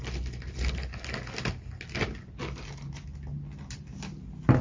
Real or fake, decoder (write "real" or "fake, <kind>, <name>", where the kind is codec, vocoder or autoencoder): real